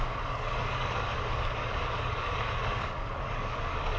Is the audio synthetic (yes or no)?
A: yes